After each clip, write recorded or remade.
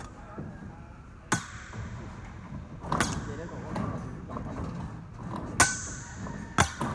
recorded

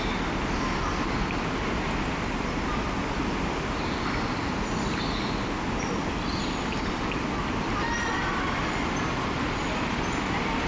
recorded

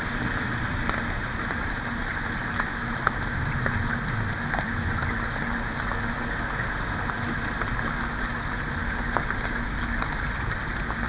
recorded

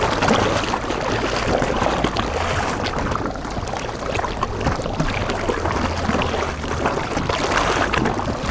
recorded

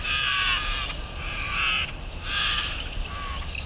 recorded